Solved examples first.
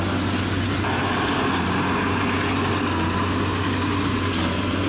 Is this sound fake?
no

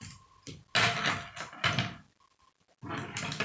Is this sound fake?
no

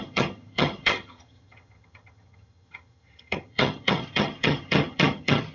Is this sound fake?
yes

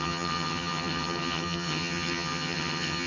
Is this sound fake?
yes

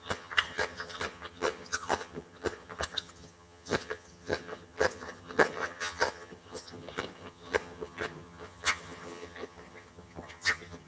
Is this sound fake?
yes